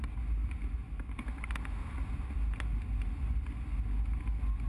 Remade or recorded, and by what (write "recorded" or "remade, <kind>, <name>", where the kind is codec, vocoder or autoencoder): recorded